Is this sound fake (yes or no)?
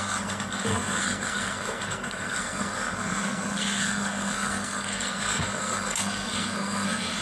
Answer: yes